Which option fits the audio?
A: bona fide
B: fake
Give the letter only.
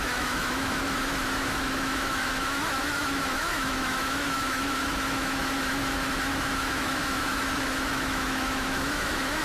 B